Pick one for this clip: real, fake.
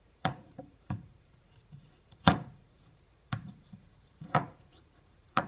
fake